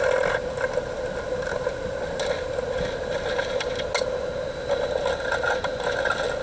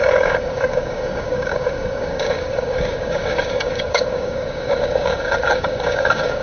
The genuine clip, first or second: first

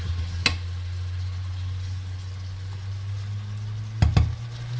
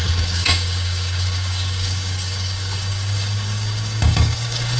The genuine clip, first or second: first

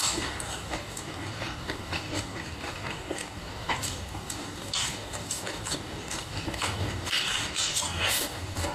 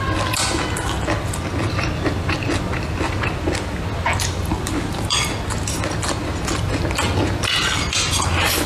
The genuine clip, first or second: second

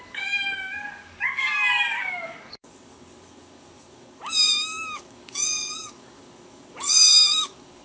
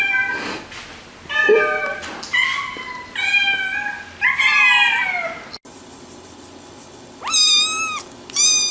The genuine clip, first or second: second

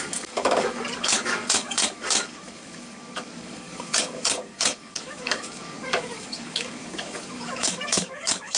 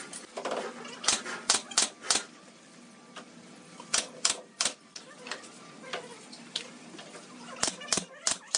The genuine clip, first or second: second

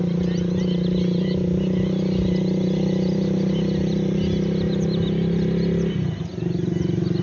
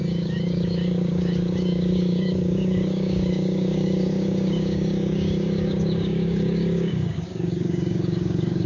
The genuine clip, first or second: first